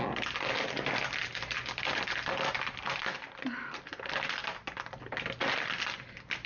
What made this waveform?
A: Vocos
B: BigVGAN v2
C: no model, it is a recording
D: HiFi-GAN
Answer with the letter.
C